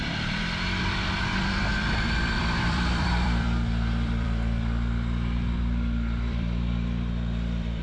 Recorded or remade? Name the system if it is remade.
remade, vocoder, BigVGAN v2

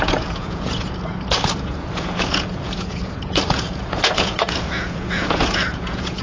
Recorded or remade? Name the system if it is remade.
remade, vocoder, Vocos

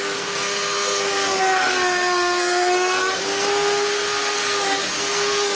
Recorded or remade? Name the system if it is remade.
remade, codec, SNAC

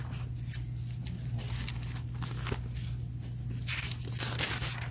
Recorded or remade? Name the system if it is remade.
recorded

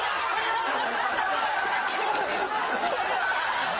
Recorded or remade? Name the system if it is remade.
recorded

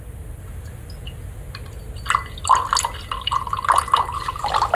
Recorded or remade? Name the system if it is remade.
recorded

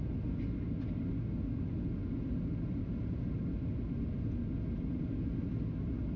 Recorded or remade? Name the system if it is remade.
recorded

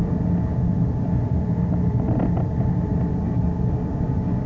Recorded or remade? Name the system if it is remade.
recorded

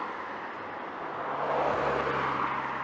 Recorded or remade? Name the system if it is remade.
recorded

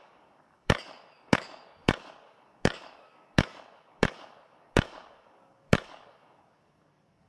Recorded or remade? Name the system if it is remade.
remade, codec, DAC